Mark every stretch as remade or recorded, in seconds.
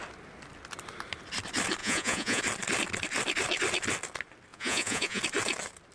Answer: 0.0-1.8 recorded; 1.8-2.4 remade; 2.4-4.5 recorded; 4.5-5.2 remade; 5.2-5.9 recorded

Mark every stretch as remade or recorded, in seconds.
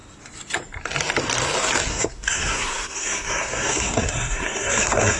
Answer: 0.0-1.9 recorded; 1.9-5.2 remade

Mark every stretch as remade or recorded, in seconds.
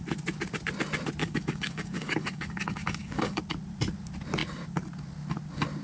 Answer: 0.0-1.2 recorded; 1.2-3.4 remade; 3.4-5.8 recorded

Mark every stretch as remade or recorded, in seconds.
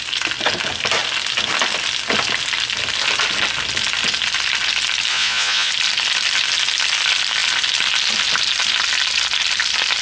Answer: 0.0-5.1 recorded; 5.1-5.7 remade; 5.7-10.0 recorded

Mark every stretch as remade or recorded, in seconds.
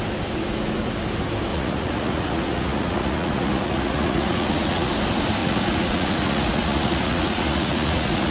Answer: 0.0-1.5 recorded; 1.5-4.9 remade; 4.9-5.4 recorded; 5.4-8.3 remade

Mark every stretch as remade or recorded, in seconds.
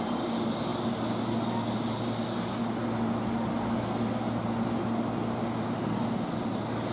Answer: 0.0-6.9 recorded